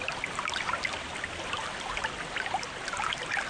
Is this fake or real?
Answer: real